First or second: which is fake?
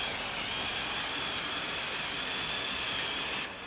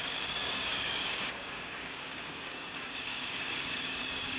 second